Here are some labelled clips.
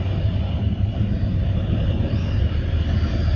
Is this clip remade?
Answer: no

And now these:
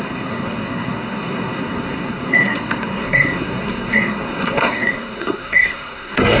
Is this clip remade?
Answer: yes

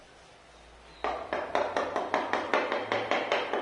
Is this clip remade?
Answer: no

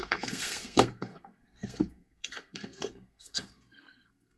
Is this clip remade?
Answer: yes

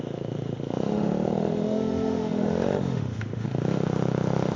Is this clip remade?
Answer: yes